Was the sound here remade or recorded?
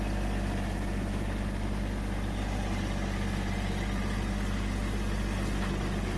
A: recorded